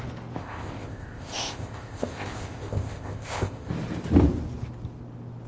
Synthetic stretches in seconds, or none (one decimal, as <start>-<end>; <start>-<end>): 0.4-3.7